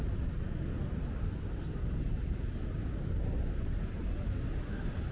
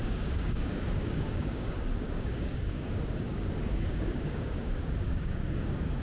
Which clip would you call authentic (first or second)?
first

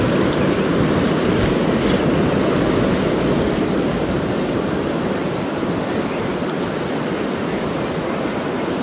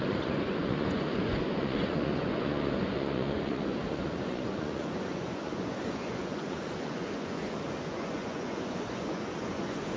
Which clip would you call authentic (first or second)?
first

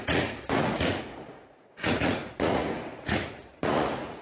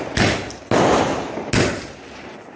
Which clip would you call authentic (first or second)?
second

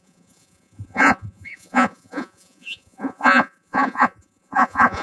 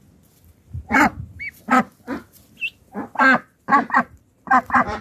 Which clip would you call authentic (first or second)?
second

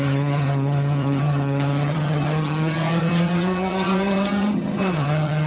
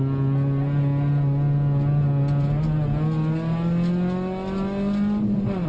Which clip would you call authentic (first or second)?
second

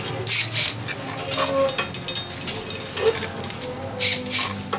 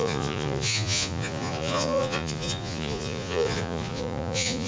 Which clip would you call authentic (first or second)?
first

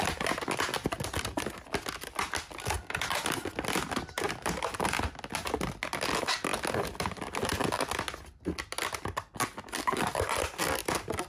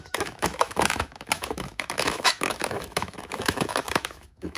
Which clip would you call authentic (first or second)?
first